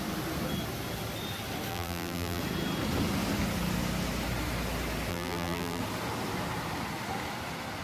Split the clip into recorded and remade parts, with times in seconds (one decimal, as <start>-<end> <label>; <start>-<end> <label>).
0.0-1.7 recorded; 1.7-2.4 remade; 2.4-5.1 recorded; 5.1-5.8 remade; 5.8-7.8 recorded